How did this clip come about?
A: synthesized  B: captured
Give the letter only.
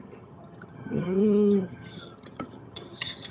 A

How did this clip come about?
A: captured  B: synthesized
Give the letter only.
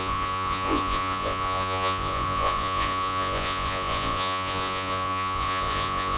B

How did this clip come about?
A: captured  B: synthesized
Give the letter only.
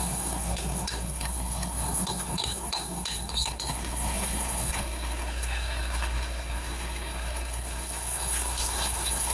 B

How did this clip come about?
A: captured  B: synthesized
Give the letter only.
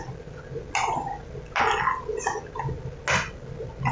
A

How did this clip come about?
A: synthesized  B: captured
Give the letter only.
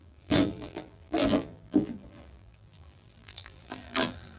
A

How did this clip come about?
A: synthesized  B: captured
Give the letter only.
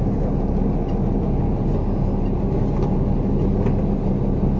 B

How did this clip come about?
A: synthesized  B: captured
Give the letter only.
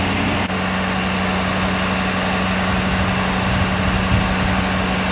B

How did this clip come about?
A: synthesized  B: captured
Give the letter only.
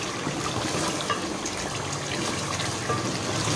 B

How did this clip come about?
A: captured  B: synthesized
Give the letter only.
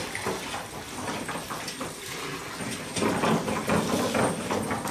A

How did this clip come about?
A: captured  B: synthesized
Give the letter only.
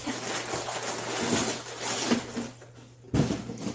A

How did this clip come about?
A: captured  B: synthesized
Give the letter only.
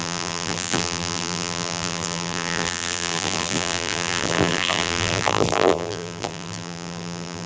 B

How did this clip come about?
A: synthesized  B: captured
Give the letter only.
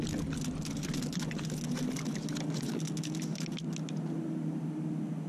B